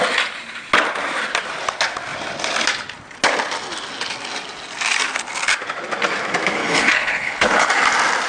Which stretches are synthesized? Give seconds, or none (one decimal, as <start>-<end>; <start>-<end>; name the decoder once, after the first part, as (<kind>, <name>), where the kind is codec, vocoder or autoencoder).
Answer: 6.6-7.7 (codec, HILCodec)